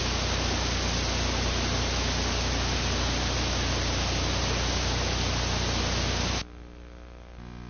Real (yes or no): yes